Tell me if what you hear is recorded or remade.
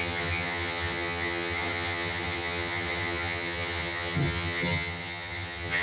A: remade